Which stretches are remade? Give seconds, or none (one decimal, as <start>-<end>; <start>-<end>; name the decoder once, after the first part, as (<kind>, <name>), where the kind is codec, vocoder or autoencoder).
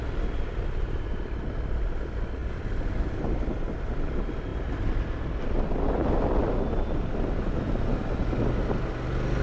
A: 2.4-3.2 (vocoder, BigVGAN v2)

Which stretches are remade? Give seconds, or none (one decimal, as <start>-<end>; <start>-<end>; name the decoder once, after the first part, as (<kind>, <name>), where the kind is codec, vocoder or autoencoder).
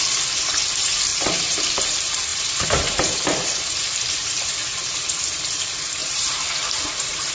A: 1.1-1.8 (vocoder, BigVGAN v2); 2.3-4.5; 6.0-7.3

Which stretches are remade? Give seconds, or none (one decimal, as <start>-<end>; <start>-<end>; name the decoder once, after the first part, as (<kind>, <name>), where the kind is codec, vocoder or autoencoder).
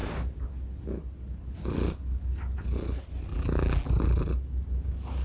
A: 3.3-3.9 (vocoder, BigVGAN v2)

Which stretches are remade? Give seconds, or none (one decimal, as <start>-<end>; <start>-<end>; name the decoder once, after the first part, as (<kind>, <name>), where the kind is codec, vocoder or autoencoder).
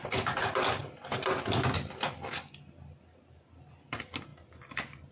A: 0.0-0.8 (vocoder, BigVGAN v2); 3.9-5.1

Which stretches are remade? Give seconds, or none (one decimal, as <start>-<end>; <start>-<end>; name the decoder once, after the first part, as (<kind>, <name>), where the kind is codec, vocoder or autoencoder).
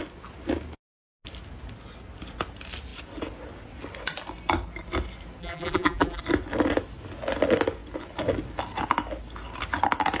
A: 5.4-6.2 (vocoder, BigVGAN v2)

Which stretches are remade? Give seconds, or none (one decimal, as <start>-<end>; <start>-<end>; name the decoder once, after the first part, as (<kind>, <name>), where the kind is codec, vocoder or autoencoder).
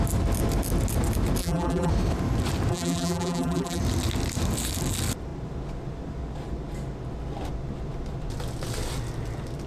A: 1.4-1.9 (vocoder, BigVGAN v2); 2.7-3.8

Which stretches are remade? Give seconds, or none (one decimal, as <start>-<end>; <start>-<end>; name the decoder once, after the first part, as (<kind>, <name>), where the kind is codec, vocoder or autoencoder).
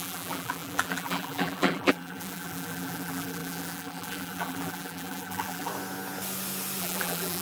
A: 0.0-5.7 (vocoder, BigVGAN v2); 6.8-7.4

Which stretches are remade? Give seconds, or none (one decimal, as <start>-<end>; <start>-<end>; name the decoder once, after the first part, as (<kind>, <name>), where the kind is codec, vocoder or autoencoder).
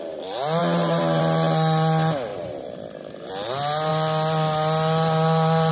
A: 0.6-1.2 (vocoder, BigVGAN v2); 2.3-3.3